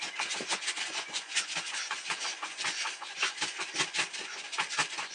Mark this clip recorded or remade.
remade